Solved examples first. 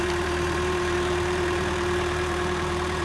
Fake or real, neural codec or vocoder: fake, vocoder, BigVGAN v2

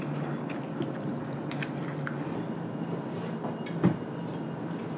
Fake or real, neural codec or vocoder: real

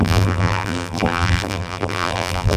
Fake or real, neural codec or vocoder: fake, vocoder, BigVGAN v2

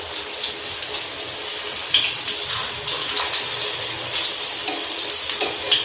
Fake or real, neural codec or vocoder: real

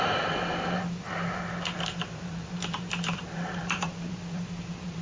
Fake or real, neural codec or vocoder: fake, vocoder, BigVGAN v2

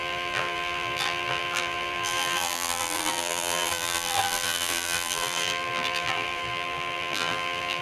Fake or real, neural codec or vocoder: fake, vocoder, BigVGAN v2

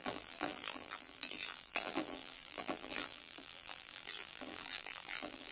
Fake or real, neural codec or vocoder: fake, vocoder, BigVGAN v2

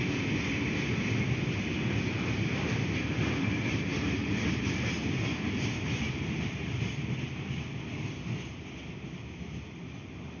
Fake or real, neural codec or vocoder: real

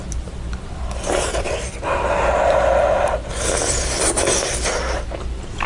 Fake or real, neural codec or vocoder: real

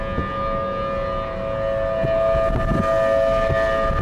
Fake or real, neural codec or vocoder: real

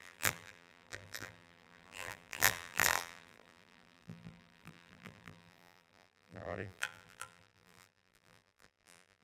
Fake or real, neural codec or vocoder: fake, vocoder, BigVGAN v2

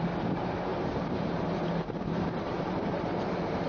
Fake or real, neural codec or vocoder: fake, vocoder, BigVGAN v2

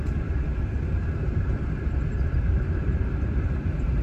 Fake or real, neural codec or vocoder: fake, vocoder, BigVGAN v2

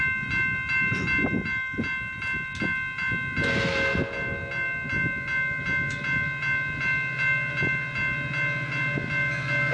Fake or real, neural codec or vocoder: real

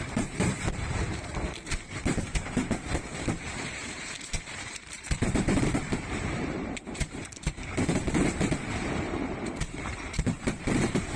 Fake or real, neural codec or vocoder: fake, vocoder, BigVGAN v2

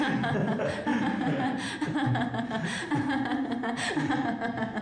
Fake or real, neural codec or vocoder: fake, vocoder, BigVGAN v2